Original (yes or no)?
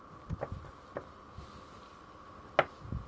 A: yes